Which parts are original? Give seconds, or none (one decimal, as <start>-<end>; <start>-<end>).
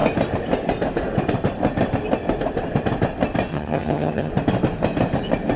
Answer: 0.0-3.5; 4.3-5.6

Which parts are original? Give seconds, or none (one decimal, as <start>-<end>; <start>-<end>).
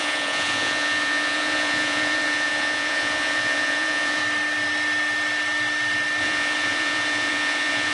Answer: 4.2-6.2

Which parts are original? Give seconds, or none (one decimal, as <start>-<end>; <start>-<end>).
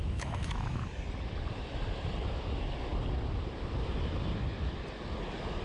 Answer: 0.8-5.6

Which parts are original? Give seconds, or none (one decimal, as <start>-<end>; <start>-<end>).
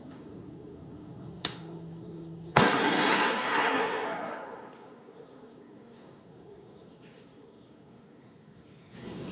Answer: none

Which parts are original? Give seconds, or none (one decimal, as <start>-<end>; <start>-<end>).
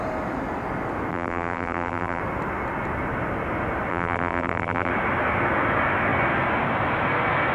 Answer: 0.0-1.1; 2.2-3.9; 4.9-7.5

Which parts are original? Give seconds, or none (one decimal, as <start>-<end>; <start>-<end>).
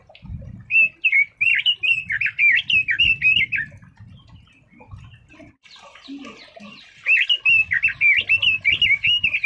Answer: 0.0-1.5; 3.0-9.5